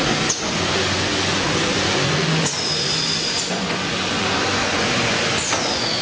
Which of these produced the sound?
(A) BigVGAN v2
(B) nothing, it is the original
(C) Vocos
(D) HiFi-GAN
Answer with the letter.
C